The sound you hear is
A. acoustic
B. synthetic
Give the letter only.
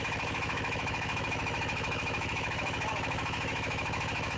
B